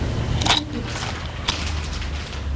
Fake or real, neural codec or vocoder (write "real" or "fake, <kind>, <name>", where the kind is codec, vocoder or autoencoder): real